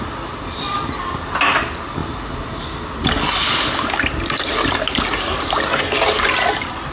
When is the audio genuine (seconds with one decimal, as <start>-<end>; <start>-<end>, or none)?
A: 0.0-6.9